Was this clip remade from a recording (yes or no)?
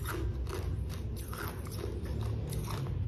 no